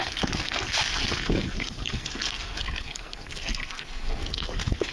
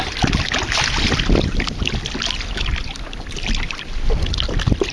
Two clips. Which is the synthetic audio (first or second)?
first